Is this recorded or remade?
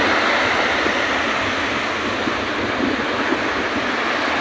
recorded